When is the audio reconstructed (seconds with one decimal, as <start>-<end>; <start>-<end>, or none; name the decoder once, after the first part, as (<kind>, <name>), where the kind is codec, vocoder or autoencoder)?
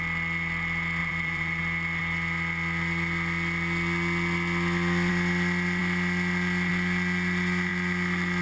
1.0-1.6 (vocoder, BigVGAN v2)